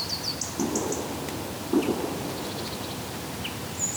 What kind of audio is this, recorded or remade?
recorded